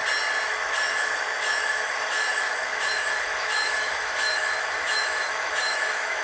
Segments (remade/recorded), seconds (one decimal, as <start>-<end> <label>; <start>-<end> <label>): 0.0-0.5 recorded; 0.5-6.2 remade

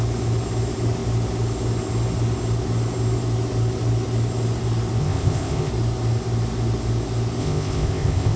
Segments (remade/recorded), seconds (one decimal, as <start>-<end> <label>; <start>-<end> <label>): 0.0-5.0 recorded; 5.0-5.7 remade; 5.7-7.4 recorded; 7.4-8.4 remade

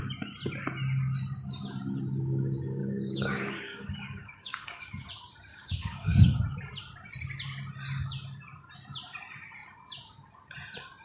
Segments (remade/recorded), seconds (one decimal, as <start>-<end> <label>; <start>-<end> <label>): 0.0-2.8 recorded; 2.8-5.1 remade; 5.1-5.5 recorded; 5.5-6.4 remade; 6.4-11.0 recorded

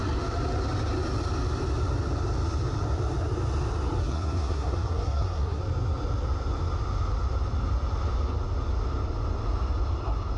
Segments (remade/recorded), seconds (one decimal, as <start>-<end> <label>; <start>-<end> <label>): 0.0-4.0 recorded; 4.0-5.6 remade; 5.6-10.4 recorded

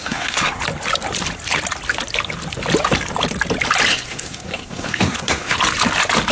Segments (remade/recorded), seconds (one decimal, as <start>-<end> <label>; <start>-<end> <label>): 0.0-0.6 remade; 0.6-3.9 recorded; 3.9-5.6 remade; 5.6-6.3 recorded

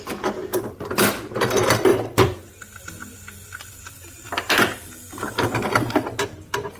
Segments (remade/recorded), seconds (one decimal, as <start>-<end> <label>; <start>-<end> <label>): 0.0-0.5 recorded; 0.5-1.1 remade; 1.1-1.9 recorded; 1.9-2.8 remade; 2.8-6.8 recorded

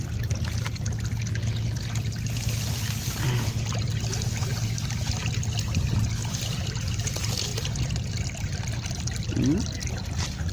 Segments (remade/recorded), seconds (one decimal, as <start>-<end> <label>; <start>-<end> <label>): 0.0-6.2 recorded; 6.2-6.9 remade; 6.9-10.5 recorded